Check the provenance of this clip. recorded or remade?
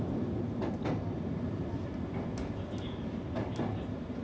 recorded